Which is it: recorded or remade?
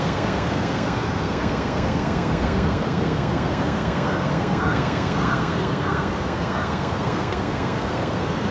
remade